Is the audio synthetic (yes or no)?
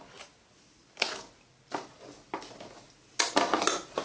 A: no